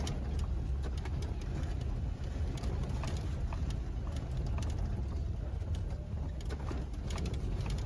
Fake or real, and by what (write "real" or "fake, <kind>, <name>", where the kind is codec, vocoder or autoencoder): real